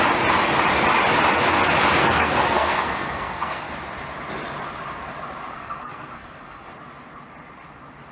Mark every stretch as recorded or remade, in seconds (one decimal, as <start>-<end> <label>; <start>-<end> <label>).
0.0-2.0 recorded; 2.0-3.7 remade; 3.7-5.5 recorded; 5.5-6.7 remade; 6.7-8.1 recorded